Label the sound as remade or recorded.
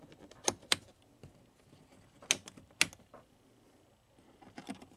recorded